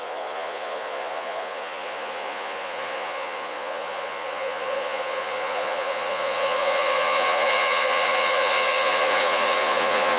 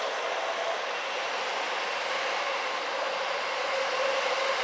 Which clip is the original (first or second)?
second